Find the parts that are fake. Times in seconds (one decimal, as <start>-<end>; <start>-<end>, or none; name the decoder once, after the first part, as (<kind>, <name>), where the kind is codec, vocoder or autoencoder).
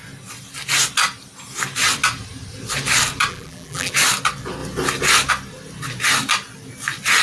3.3-3.9 (vocoder, BigVGAN v2)